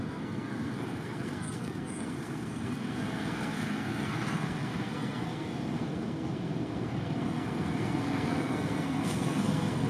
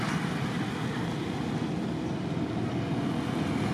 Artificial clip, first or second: first